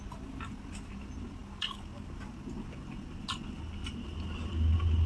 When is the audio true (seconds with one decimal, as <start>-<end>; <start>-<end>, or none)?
0.0-5.1